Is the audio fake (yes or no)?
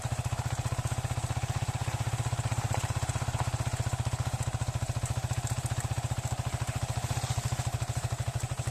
yes